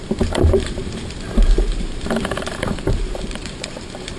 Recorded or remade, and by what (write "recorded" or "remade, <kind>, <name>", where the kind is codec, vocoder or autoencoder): remade, vocoder, BigVGAN v2